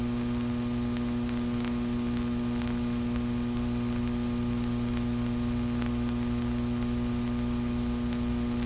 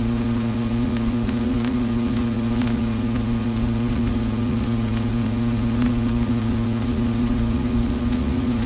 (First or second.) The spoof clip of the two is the second